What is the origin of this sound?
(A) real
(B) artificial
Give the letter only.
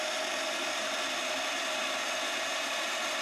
B